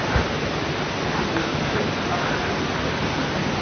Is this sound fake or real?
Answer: real